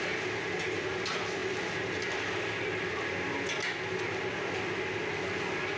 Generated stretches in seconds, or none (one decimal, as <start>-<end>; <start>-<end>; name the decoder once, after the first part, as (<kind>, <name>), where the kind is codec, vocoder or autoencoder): none